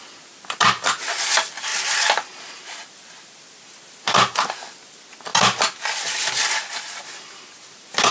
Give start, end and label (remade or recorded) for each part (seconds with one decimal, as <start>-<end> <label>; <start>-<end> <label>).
0.0-8.1 recorded